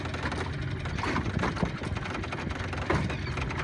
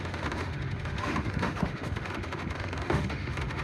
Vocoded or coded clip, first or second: second